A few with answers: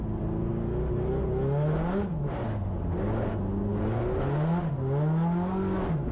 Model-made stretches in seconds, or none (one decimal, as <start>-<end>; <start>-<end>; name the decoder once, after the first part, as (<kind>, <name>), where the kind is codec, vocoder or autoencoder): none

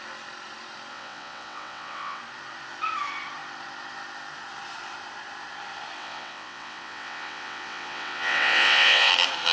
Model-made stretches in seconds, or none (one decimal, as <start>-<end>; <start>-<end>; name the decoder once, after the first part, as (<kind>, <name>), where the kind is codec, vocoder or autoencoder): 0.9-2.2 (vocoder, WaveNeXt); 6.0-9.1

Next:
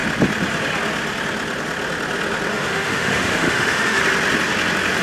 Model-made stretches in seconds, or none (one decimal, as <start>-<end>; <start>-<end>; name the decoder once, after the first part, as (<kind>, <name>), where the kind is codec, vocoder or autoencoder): 2.5-4.0 (autoencoder, DAC-VAE)

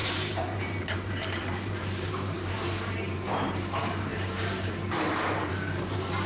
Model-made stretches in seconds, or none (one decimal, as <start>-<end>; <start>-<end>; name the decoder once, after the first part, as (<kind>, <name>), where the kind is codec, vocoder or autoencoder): 0.0-6.3 (vocoder, BigVGAN v2)

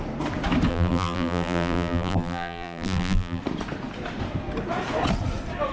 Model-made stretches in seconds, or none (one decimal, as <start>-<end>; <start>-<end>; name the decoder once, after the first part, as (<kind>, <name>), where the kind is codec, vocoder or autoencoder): 0.7-3.4 (vocoder, BigVGAN v2)

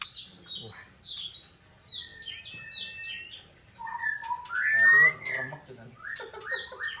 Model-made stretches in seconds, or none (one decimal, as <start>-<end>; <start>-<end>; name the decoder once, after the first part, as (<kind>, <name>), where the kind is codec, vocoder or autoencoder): none

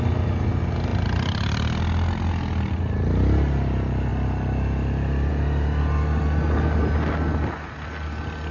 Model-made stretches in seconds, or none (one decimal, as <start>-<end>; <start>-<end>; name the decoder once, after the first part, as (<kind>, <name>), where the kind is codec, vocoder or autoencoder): none